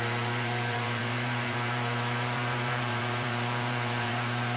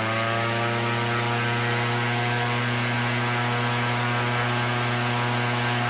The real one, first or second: second